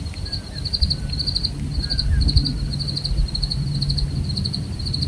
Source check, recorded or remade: recorded